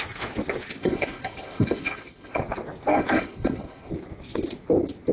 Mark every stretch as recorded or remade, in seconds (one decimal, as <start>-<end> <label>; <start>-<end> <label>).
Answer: 0.0-0.8 recorded; 0.8-2.4 remade; 2.4-2.9 recorded; 2.9-3.9 remade; 3.9-5.1 recorded